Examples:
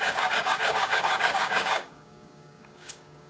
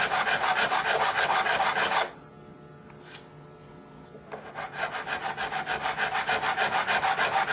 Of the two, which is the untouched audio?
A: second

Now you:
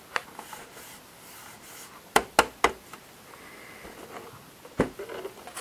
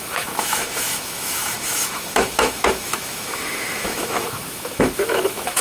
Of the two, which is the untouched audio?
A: first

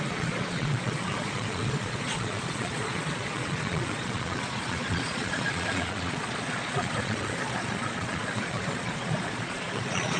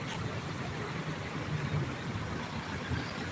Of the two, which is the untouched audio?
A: second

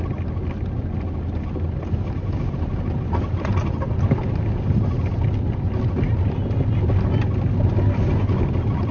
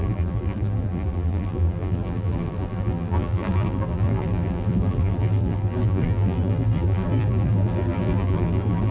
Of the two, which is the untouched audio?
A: first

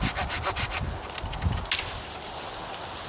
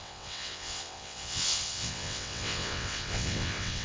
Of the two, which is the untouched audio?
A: first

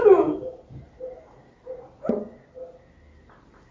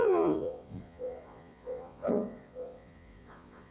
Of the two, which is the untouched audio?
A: first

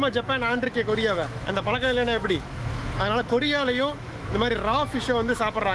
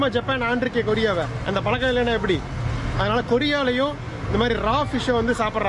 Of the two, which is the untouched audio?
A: second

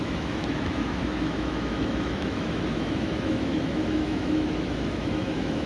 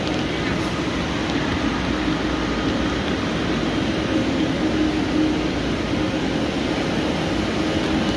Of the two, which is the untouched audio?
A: second